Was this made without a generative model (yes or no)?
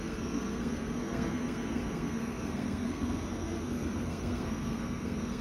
no